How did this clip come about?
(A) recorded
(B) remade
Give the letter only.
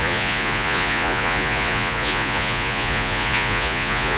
B